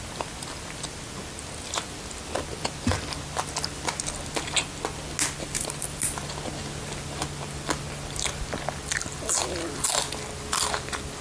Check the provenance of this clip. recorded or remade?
recorded